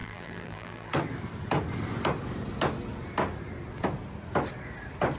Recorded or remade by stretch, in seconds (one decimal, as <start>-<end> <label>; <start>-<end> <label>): 0.0-0.9 remade; 0.9-5.2 recorded